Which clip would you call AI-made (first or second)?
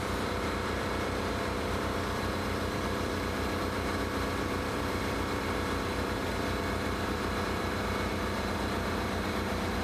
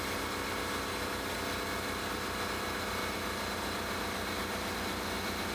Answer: first